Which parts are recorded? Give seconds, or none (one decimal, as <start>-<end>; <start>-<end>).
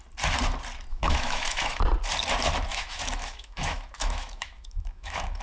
0.0-0.9; 1.8-2.7